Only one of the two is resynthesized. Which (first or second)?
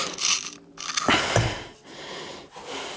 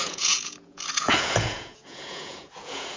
second